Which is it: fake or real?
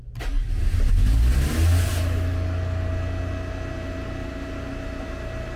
real